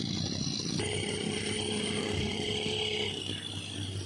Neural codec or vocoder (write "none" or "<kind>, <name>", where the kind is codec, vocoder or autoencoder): none